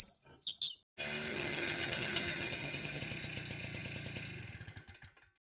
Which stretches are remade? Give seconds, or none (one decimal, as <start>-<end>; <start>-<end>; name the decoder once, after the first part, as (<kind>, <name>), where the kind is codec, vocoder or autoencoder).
1.3-3.0 (vocoder, HiFi-GAN)